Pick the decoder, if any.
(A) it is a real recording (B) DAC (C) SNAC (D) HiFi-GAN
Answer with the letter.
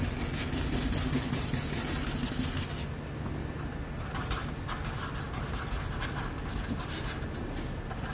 A